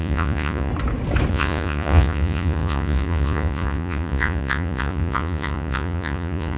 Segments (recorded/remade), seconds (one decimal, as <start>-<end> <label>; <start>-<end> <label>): 0.0-0.7 remade; 0.7-1.3 recorded; 1.3-6.6 remade